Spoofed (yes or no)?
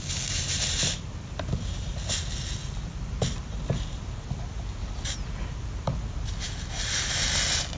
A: no